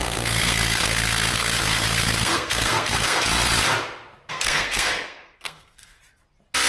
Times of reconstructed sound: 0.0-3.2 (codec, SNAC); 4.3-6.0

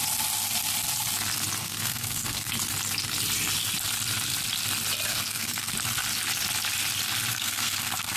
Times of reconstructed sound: 1.6-2.5 (codec, SNAC); 5.1-5.7; 7.3-8.2

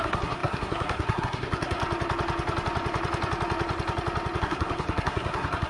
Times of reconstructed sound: 0.0-1.8 (codec, SNAC); 4.4-5.7

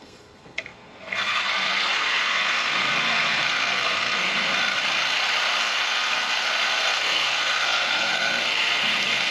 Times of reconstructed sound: 0.0-4.5 (codec, SNAC); 5.6-9.3